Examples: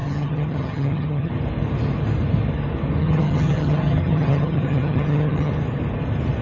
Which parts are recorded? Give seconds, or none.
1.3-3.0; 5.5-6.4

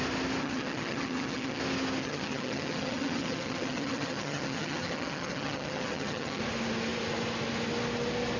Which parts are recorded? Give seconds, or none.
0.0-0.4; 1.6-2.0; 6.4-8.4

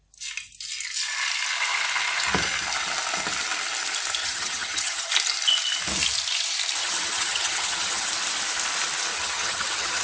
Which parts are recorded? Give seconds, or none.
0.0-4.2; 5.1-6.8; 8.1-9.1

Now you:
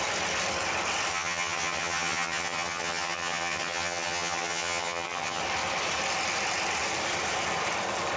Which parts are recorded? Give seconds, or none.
0.0-1.1; 5.4-8.2

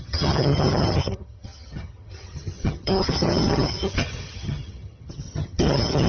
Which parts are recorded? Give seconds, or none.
none

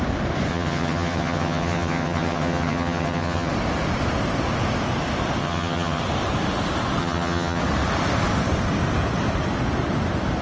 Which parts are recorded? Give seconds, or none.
0.0-0.5; 3.5-5.4; 6.0-7.0; 7.6-10.4

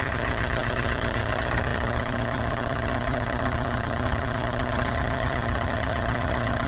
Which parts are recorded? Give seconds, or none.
none